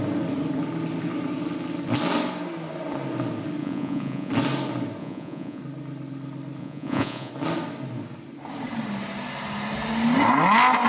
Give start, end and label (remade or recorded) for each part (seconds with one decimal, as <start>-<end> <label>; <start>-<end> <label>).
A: 0.0-3.6 recorded; 3.6-4.3 remade; 4.3-5.0 recorded; 5.0-5.6 remade; 5.6-6.6 recorded; 6.6-7.3 remade; 7.3-10.9 recorded